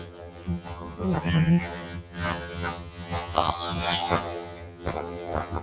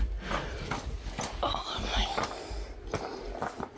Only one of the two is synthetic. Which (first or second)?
first